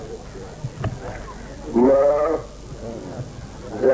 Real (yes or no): yes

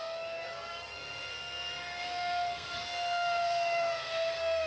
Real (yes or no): no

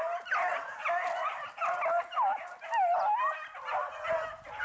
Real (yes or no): yes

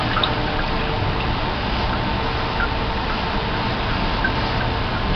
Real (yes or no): yes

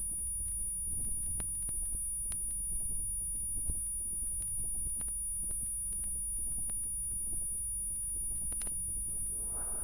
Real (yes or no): yes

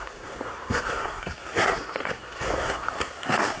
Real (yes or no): no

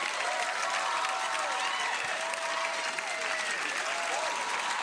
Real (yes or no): yes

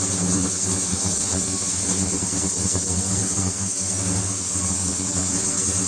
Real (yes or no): no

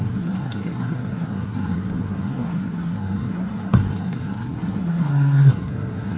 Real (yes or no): no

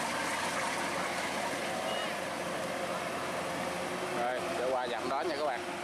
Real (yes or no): yes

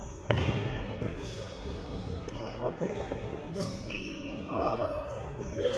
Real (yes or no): no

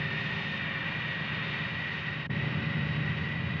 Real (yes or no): yes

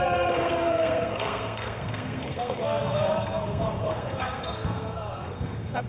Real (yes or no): no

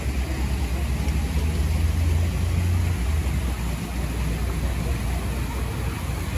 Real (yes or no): yes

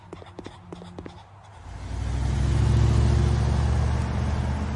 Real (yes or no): yes